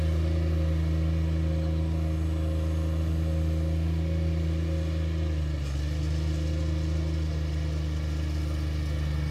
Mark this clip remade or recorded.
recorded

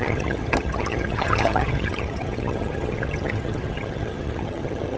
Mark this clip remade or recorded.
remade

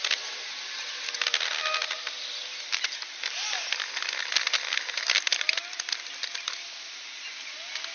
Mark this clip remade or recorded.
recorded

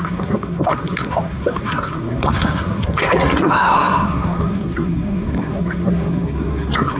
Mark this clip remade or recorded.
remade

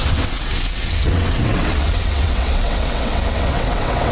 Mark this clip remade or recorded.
remade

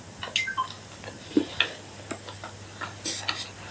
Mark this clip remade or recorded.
recorded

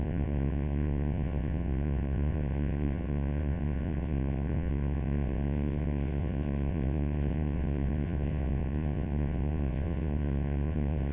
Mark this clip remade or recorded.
remade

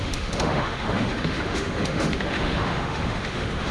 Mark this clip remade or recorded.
remade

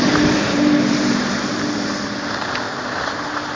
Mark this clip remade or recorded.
remade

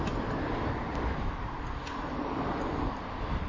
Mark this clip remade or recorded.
recorded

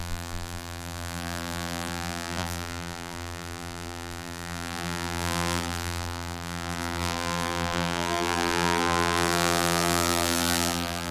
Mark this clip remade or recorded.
remade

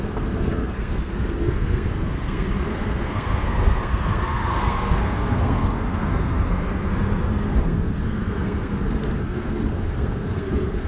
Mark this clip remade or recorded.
remade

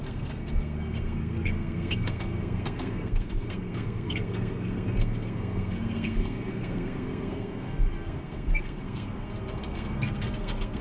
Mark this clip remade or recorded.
remade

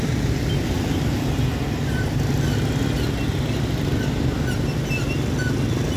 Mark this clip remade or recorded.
recorded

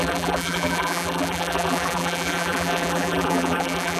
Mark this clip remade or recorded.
remade